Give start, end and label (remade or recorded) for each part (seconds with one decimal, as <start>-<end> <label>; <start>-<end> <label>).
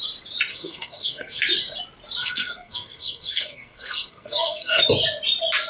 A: 0.0-0.5 recorded; 0.5-1.4 remade; 1.4-2.2 recorded; 2.2-4.8 remade; 4.8-5.7 recorded